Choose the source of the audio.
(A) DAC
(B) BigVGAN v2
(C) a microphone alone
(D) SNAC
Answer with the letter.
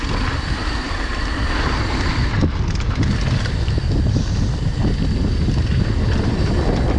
C